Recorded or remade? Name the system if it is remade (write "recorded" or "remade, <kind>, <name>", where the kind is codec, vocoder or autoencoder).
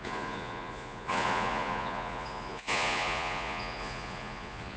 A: remade, vocoder, Vocos